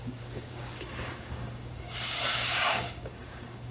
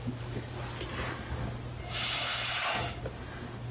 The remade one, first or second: first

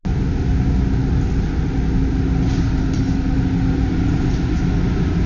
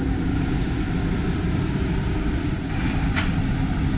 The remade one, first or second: second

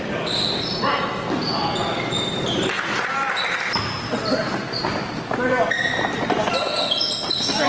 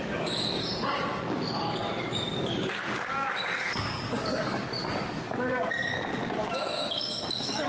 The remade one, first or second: second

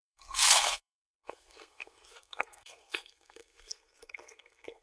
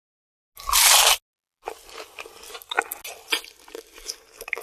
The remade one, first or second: first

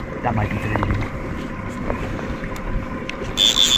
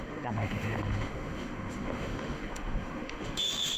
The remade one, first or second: second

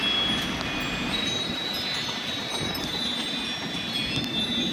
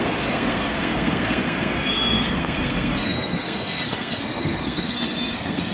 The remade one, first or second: second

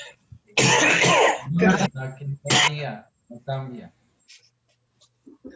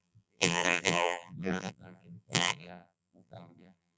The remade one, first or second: second